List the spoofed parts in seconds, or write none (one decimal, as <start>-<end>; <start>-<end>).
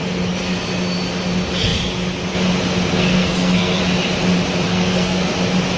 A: 2.9-3.8; 4.7-5.3